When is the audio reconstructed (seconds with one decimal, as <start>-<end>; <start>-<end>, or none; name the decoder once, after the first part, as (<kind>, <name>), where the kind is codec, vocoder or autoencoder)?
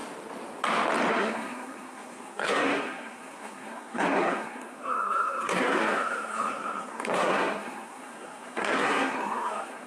1.1-9.9 (codec, SNAC)